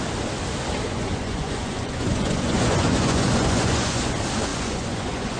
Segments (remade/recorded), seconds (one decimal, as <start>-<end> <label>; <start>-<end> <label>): 0.0-0.9 recorded; 0.9-4.1 remade; 4.1-4.5 recorded; 4.5-5.4 remade